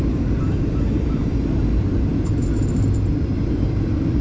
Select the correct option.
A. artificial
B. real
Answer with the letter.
A